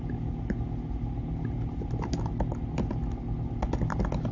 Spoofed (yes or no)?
no